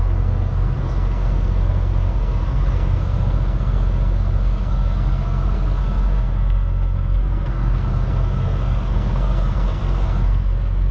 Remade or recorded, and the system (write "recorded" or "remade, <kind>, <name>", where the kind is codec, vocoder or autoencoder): remade, codec, SNAC